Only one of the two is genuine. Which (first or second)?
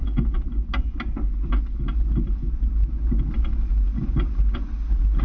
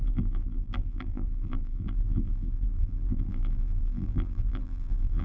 first